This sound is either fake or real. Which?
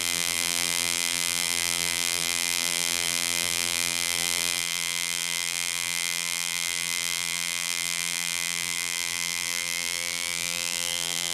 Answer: fake